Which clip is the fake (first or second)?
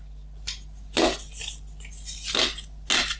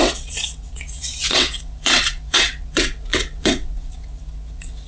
second